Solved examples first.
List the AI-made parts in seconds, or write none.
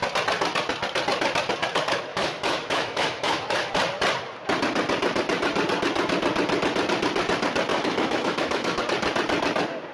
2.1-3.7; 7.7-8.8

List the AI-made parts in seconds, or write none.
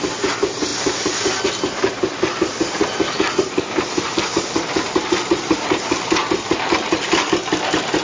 none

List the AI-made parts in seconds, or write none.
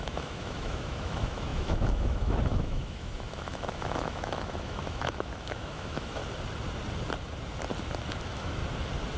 0.0-6.2; 8.2-8.6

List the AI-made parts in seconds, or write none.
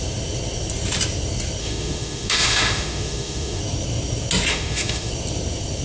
1.6-3.6; 4.5-5.1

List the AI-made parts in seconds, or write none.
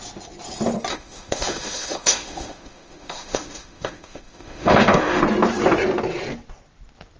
0.9-5.2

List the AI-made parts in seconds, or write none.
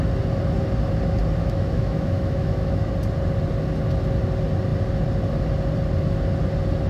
1.4-2.9